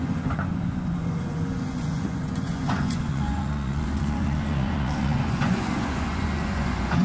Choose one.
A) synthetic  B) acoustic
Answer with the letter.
A